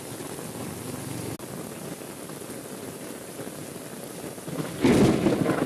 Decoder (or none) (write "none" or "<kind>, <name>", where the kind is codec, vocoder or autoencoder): none